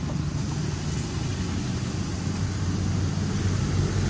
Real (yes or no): yes